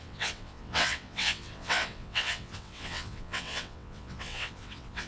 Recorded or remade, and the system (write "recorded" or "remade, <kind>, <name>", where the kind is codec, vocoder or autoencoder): remade, vocoder, WaveNeXt